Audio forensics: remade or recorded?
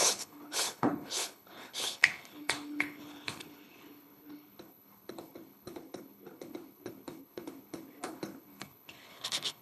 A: remade